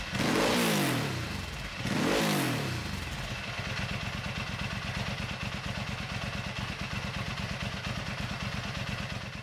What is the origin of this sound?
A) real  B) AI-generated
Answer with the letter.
A